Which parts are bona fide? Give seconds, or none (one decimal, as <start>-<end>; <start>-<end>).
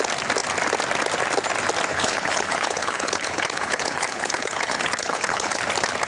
0.0-1.9; 5.6-6.1